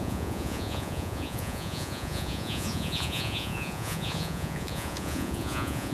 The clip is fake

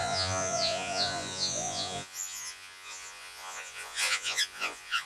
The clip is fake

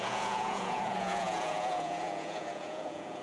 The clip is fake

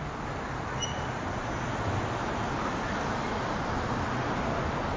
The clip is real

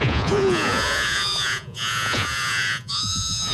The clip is fake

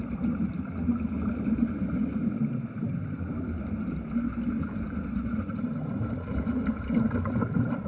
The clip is real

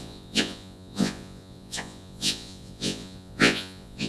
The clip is fake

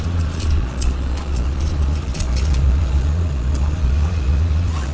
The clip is fake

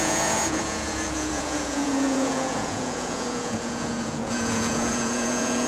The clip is fake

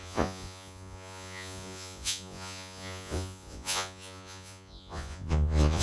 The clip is fake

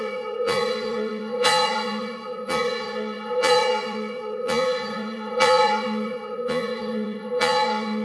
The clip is fake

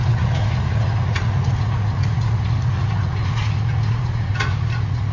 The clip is fake